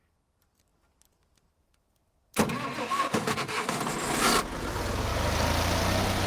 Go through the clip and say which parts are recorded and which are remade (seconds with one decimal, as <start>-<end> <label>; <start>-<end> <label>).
0.0-2.8 recorded; 2.8-3.8 remade; 3.8-6.3 recorded